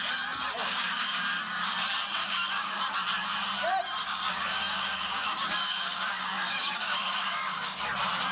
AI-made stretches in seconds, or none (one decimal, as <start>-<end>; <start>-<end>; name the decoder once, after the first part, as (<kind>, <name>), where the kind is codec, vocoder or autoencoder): 0.6-1.2 (codec, DAC); 2.2-2.8; 4.0-7.8